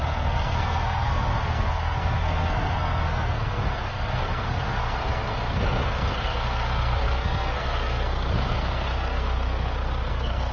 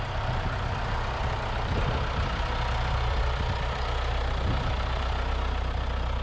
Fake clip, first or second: first